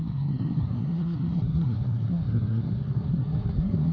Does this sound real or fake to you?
fake